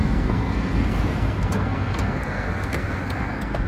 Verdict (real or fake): fake